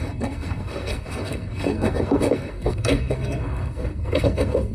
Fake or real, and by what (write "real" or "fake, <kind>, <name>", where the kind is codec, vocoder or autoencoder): fake, codec, SNAC